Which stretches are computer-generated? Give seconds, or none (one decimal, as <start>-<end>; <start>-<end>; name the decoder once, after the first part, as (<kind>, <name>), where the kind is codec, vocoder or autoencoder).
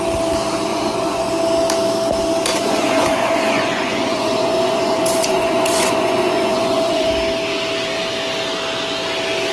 0.7-1.3 (vocoder, Vocos); 2.5-7.1